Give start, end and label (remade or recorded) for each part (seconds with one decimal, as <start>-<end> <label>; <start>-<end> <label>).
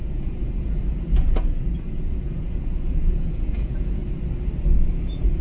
0.0-4.0 remade; 4.0-4.9 recorded; 4.9-5.4 remade